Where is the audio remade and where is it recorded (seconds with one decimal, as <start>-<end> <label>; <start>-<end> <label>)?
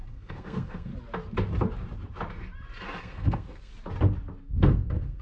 0.0-0.9 remade; 0.9-3.0 recorded; 3.0-3.7 remade; 3.7-4.4 recorded; 4.4-5.2 remade